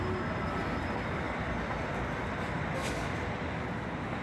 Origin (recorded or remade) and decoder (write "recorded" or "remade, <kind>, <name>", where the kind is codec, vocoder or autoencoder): recorded